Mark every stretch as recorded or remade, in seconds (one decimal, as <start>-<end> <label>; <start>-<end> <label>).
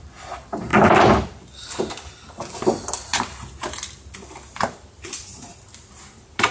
0.0-6.5 recorded